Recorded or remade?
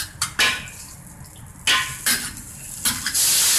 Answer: recorded